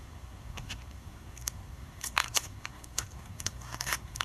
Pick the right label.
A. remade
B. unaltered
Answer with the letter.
A